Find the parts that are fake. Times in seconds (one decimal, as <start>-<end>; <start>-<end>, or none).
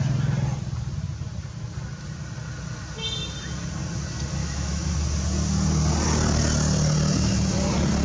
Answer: 4.4-4.9